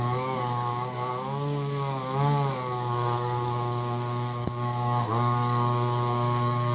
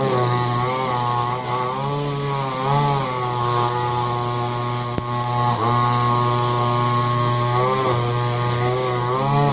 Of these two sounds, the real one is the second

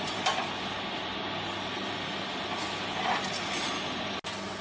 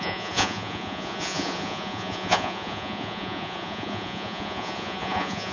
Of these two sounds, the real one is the first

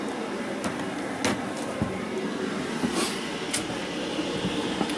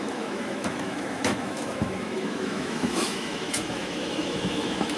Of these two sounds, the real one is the first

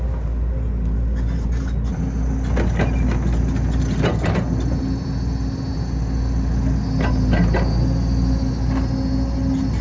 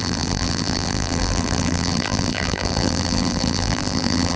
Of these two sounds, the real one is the first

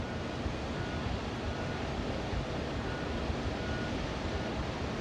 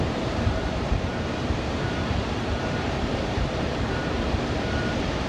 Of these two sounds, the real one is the first